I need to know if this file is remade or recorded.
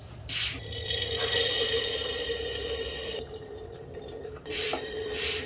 remade